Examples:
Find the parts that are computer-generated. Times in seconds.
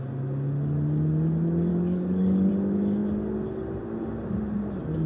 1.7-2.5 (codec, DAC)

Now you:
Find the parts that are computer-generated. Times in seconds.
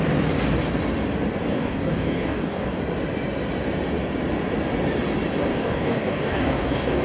1.5-2.8 (codec, DAC); 5.5-7.0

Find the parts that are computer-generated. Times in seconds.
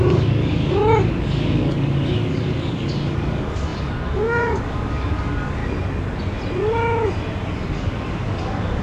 0.0-5.6 (codec, DAC); 7.5-8.8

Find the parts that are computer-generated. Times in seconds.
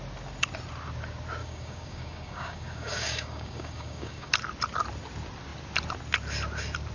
1.4-4.3 (codec, DAC)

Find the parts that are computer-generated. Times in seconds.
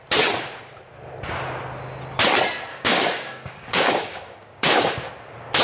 2.7-5.1 (codec, DAC)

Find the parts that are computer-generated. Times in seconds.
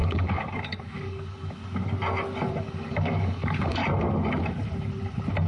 0.0-1.6 (codec, DAC); 2.6-3.8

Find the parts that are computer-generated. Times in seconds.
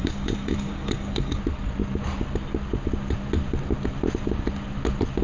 0.0-1.4 (codec, DAC)